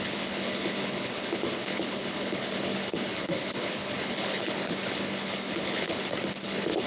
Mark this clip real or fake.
fake